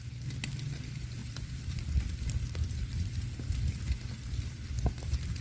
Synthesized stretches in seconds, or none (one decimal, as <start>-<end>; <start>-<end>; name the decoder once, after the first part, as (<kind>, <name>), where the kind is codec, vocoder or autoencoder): 1.2-3.5 (vocoder, BigVGAN v2)